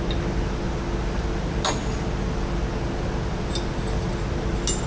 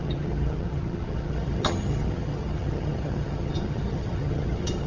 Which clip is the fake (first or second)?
second